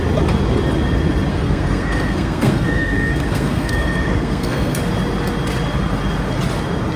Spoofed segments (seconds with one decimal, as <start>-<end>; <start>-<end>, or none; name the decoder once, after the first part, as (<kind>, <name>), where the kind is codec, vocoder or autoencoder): 1.3-4.8 (codec, SNAC)